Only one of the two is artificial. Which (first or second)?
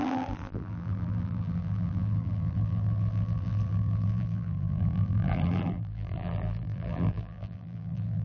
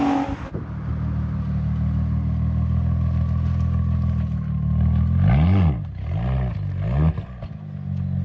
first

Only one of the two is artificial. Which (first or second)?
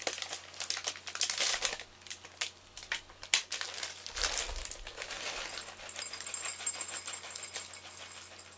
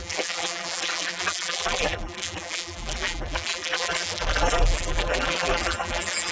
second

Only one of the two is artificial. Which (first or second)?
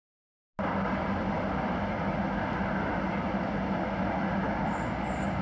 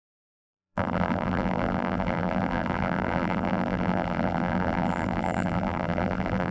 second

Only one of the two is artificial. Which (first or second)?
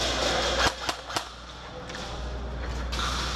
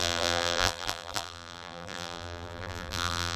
second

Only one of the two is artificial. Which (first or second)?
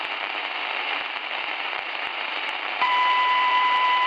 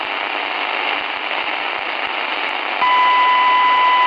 first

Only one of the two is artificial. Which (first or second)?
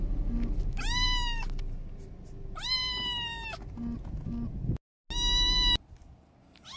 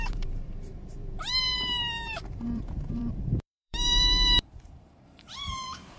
second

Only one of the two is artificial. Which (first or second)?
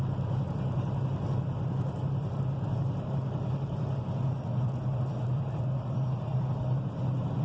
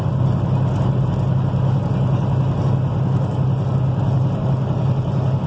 first